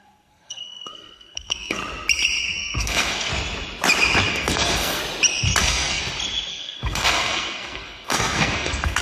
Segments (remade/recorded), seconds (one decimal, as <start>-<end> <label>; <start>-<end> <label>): 0.0-1.8 remade; 1.8-2.4 recorded; 2.4-3.3 remade; 3.3-4.3 recorded; 4.3-5.0 remade; 5.0-5.6 recorded; 5.6-6.0 remade; 6.0-6.5 recorded; 6.5-9.0 remade